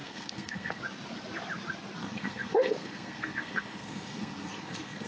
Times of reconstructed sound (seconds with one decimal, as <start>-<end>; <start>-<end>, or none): 0.0-0.8; 2.0-5.1